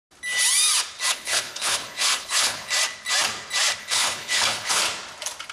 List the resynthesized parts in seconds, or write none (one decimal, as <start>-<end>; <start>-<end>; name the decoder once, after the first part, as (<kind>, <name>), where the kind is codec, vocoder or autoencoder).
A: 1.1-2.7 (codec, HILCodec); 3.8-4.8